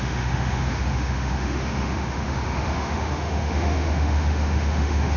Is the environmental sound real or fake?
fake